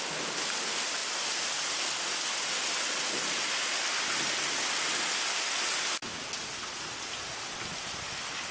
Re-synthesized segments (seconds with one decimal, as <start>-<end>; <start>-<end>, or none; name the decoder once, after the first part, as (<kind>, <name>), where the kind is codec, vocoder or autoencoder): none